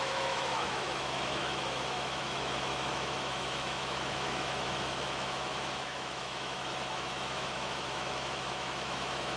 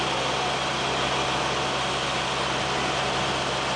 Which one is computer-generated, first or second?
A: first